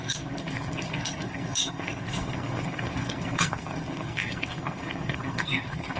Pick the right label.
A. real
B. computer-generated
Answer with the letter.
B